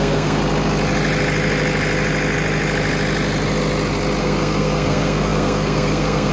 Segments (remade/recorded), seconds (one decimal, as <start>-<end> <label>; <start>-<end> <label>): 0.0-0.4 remade; 0.4-4.2 recorded; 4.2-6.3 remade